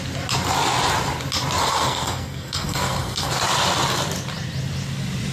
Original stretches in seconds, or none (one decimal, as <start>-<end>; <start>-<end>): 0.0-1.6; 3.3-5.3